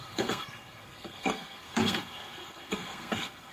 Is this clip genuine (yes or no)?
no